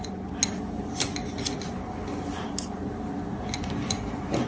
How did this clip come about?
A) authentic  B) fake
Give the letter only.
A